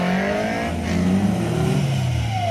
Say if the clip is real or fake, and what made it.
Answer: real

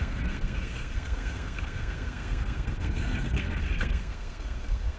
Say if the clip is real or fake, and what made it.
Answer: fake, codec, SNAC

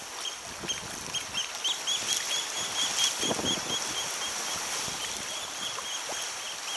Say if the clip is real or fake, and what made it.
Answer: real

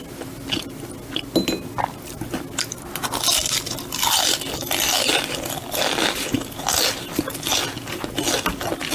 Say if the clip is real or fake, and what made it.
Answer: real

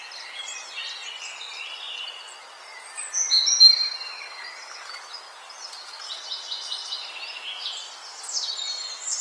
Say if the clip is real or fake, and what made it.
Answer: real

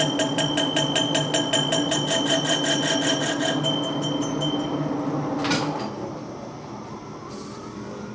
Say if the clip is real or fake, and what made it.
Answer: real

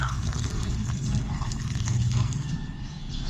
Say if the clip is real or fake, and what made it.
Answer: fake, codec, SNAC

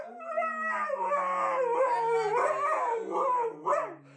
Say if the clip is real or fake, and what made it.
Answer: real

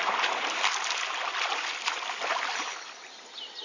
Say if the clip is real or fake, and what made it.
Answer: real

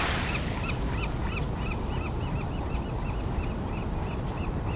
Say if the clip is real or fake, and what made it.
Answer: real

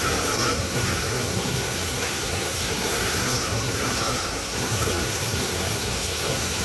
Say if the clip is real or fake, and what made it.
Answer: fake, codec, SNAC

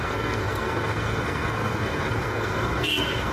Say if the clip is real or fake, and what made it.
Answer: fake, codec, SNAC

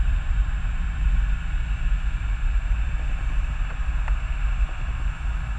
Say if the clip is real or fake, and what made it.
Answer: real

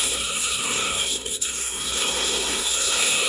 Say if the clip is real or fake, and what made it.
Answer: fake, codec, SNAC